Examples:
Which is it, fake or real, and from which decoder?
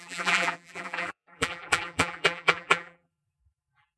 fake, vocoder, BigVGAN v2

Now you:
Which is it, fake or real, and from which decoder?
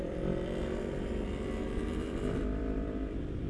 fake, vocoder, BigVGAN v2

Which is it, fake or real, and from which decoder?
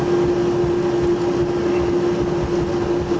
real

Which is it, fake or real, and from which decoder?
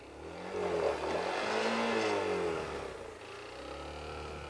real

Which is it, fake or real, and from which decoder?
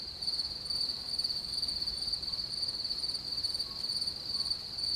fake, vocoder, BigVGAN v2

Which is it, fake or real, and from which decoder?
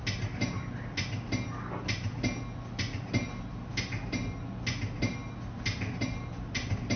real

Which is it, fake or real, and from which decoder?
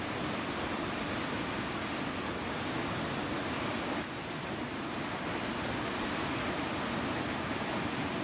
real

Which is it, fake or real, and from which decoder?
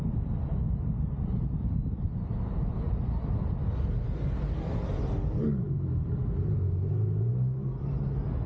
real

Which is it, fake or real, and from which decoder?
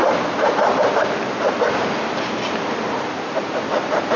real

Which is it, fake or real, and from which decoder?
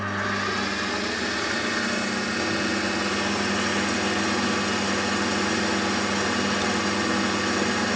real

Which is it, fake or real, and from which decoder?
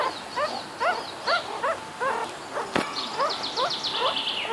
real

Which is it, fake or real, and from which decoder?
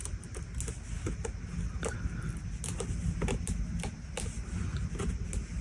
real